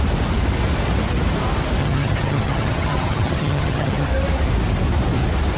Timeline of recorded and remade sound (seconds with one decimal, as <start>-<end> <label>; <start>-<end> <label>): 0.0-1.8 recorded; 1.8-4.1 remade; 4.1-5.6 recorded